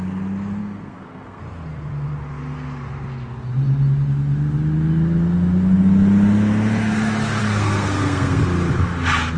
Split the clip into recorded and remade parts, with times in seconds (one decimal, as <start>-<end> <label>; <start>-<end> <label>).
0.0-0.6 recorded; 0.6-1.4 remade; 1.4-7.4 recorded; 7.4-8.4 remade; 8.4-9.4 recorded